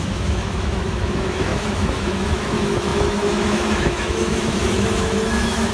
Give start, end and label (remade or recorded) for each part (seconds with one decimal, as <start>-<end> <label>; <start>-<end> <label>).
0.0-5.7 remade